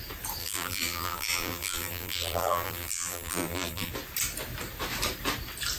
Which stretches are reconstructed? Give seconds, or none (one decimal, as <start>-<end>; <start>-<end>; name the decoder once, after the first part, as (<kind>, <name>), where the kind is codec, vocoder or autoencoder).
0.4-3.9 (vocoder, BigVGAN v2)